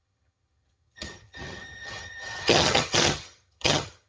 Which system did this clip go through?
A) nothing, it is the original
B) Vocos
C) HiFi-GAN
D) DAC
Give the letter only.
C